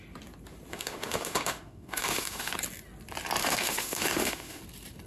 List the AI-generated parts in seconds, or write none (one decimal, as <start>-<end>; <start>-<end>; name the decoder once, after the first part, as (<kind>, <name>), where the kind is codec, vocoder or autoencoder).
0.7-2.5 (autoencoder, DAC-VAE); 3.4-4.6